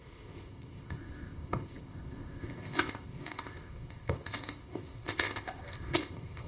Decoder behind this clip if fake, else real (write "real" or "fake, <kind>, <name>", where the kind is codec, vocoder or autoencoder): fake, codec, ZipCodec